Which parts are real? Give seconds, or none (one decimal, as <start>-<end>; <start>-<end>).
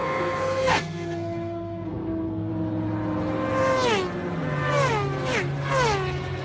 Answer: 2.5-6.4